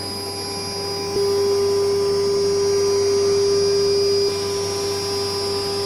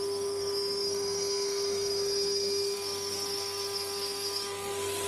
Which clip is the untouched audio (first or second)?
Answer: first